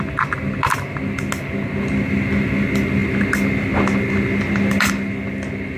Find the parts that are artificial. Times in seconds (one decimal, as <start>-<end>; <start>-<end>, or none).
none